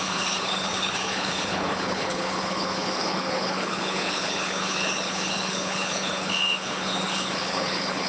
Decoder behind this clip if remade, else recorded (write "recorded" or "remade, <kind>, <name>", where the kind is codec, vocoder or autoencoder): remade, codec, HILCodec